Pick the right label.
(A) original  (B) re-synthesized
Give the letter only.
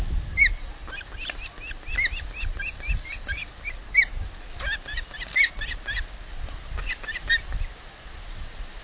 A